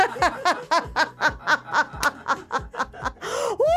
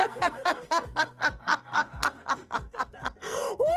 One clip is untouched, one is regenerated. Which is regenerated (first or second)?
second